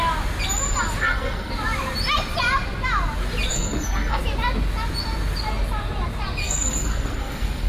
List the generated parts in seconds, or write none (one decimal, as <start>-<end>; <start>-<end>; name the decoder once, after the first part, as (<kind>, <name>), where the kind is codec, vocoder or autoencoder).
1.0-1.5 (codec, SNAC); 3.5-4.2; 6.4-7.7